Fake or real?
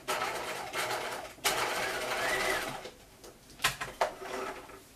real